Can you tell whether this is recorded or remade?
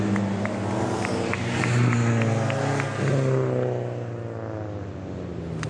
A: recorded